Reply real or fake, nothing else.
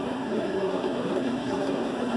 fake